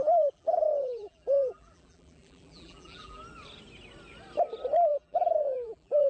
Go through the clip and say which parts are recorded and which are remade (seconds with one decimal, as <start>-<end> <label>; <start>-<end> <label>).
0.0-3.2 remade; 3.2-4.9 recorded; 4.9-6.1 remade